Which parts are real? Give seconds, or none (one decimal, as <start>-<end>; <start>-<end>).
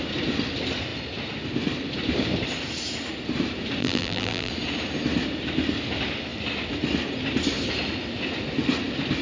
0.0-3.8; 4.5-9.2